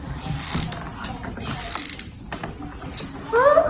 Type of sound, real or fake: real